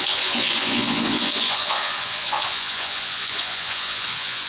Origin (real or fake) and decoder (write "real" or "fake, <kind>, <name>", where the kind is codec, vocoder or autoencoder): fake, vocoder, Vocos